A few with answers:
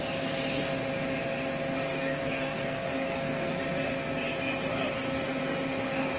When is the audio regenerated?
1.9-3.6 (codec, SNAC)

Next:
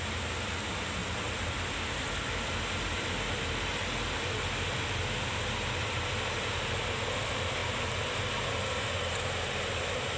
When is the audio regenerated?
none

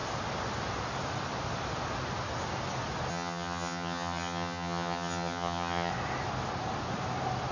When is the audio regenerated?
3.1-5.9 (vocoder, HiFi-GAN)

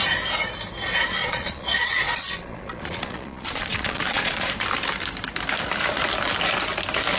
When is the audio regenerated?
1.2-4.5 (vocoder, Vocos)

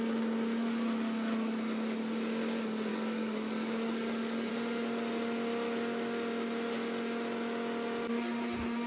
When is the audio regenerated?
2.9-4.5 (codec, DAC)

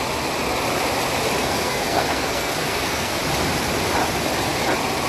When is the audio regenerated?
1.4-3.2 (codec, SNAC)

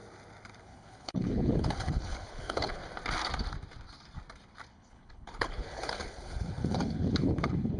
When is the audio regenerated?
0.6-2.8 (codec, HILCodec); 4.7-7.8